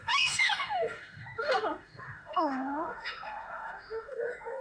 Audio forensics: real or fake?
fake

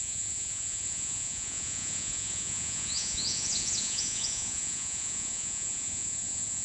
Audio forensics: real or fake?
fake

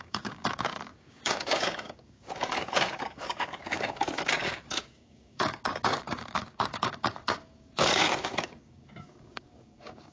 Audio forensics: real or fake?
fake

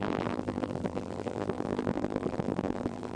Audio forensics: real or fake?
fake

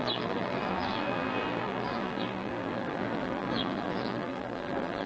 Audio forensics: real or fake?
fake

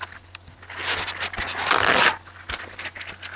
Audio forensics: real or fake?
real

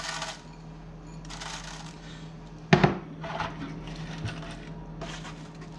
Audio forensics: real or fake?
real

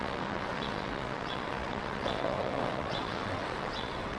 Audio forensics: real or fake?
fake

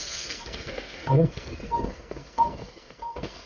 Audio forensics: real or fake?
fake